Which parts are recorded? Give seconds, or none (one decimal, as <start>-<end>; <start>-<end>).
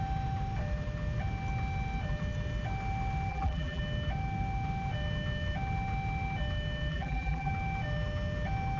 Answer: 0.0-3.3; 3.8-6.9; 7.5-8.8